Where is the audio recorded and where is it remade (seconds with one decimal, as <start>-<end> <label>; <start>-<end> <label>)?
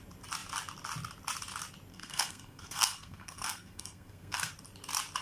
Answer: 0.0-1.9 recorded; 1.9-4.5 remade; 4.5-5.2 recorded